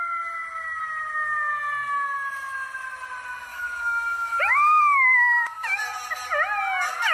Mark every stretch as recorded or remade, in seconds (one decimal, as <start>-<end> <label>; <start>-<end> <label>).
0.0-3.5 recorded; 3.5-5.8 remade; 5.8-7.1 recorded